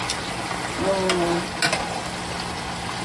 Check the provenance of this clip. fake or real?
real